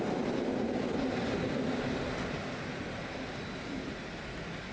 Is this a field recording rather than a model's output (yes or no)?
yes